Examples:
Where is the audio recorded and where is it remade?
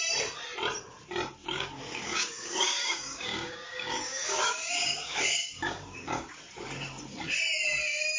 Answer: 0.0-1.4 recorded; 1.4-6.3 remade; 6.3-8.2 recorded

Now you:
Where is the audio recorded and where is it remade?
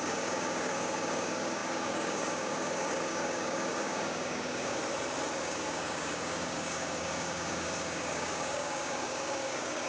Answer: 0.0-4.8 remade; 4.8-5.4 recorded; 5.4-9.9 remade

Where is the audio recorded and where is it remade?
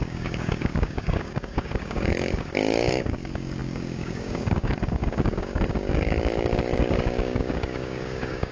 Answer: 0.0-8.5 remade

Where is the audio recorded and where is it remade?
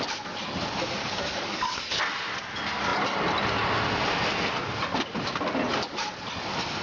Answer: 0.0-1.0 recorded; 1.0-2.0 remade; 2.0-6.8 recorded